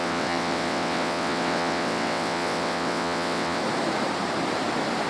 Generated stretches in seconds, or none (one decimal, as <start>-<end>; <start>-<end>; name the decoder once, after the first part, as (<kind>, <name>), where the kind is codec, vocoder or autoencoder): 0.0-3.6 (vocoder, WaveNeXt)